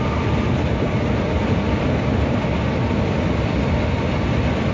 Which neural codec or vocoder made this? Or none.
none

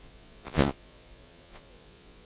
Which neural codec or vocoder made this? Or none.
vocoder, Vocos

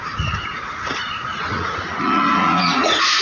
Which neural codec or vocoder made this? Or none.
vocoder, Vocos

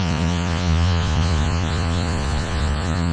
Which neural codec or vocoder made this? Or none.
vocoder, Vocos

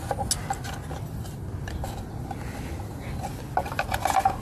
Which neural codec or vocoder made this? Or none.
none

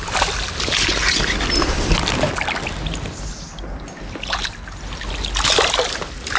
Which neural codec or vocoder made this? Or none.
none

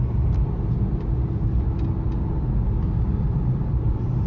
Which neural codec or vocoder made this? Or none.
none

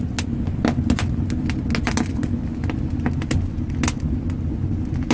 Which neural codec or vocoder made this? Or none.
none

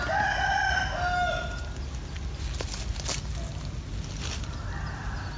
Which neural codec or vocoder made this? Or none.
none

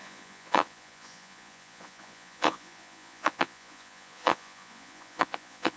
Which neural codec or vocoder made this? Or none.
vocoder, Vocos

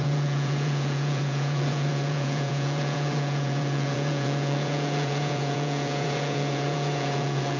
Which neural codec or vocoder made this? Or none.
vocoder, Vocos